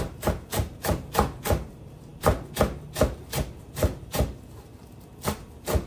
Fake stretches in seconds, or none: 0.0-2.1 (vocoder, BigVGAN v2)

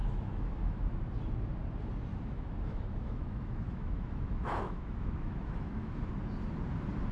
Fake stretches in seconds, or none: 0.0-1.1 (autoencoder, DAC-VAE); 2.1-6.1

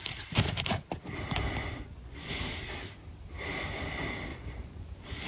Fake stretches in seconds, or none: 1.6-2.3 (vocoder, Vocos); 4.3-5.3